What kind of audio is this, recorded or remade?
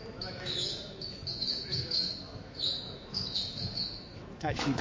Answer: remade